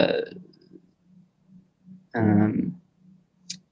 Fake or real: fake